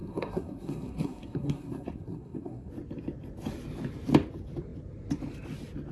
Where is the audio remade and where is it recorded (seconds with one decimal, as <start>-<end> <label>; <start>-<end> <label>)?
0.0-2.7 remade; 2.7-5.9 recorded